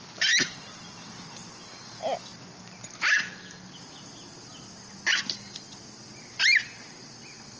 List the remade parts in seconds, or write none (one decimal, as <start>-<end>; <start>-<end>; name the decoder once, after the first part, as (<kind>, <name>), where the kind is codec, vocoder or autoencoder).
none